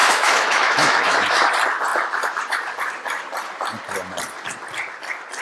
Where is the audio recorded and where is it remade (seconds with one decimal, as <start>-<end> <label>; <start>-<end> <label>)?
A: 0.0-1.5 remade; 1.5-5.4 recorded